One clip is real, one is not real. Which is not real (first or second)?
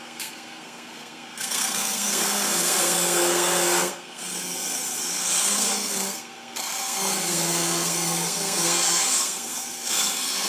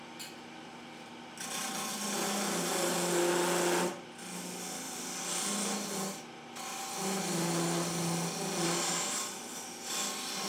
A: first